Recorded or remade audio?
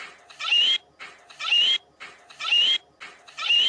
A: recorded